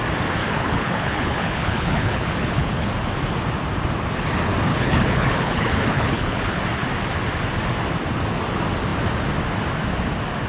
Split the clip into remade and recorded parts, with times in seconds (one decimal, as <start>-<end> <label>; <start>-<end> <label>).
0.0-0.4 recorded; 0.4-2.9 remade; 2.9-4.7 recorded; 4.7-6.6 remade; 6.6-10.5 recorded